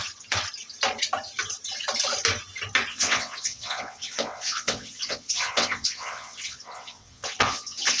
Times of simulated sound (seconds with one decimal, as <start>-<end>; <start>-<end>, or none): 2.9-8.0

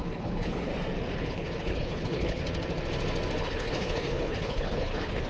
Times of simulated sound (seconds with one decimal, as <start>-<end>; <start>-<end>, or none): 0.0-0.7; 1.3-2.4; 3.4-5.3